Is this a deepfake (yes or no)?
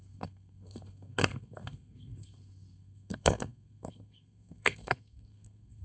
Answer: yes